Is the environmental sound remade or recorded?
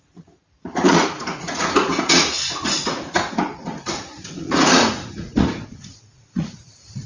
remade